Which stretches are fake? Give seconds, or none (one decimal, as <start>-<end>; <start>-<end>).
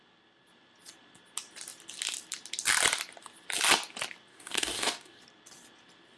4.3-5.2